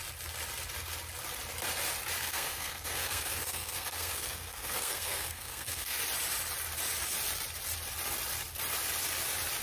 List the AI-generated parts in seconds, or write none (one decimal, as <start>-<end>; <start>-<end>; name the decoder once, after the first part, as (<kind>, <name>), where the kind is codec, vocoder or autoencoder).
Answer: 2.2-6.0 (codec, SNAC)